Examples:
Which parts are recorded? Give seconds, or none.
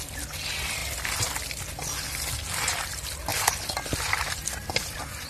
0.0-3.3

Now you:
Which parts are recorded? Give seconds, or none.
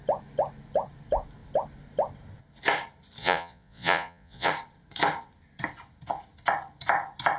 0.0-3.2; 4.5-7.4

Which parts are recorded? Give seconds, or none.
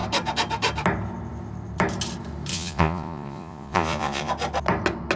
0.0-2.5; 4.3-5.2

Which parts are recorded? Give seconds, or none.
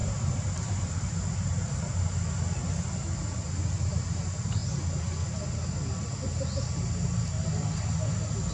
1.7-8.5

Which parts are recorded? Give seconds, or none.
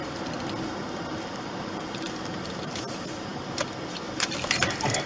none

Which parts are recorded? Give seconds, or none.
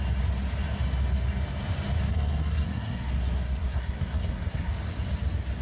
0.0-2.1; 4.7-5.6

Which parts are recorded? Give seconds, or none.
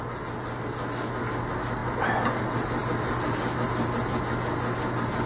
0.0-5.3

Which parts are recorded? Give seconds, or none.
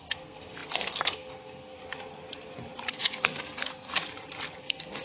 1.8-2.9; 3.9-4.6